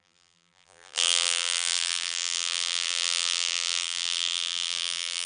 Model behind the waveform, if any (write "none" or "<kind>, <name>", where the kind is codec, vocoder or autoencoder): vocoder, BigVGAN v2